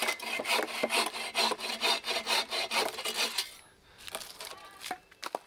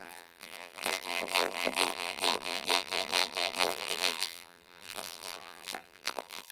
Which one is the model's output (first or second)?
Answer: second